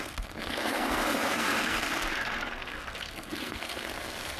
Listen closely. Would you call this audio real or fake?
fake